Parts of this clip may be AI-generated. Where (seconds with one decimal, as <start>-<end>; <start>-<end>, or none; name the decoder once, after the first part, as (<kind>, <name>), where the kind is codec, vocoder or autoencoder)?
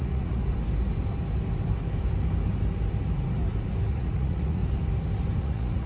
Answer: 0.0-0.4 (vocoder, Vocos); 3.9-4.6; 5.4-5.9